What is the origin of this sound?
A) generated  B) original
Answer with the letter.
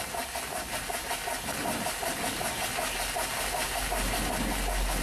B